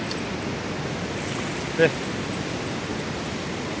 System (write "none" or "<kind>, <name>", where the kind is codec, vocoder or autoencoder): none